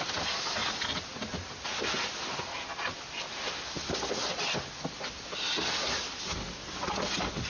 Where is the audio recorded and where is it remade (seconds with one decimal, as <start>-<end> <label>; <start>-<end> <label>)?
0.0-7.5 recorded